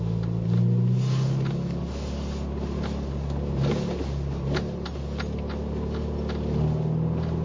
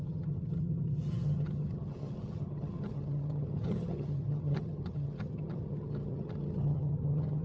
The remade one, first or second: second